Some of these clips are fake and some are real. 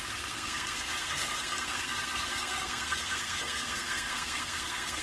fake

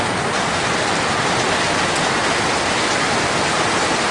real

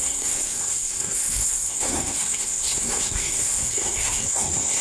fake